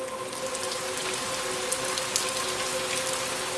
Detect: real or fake real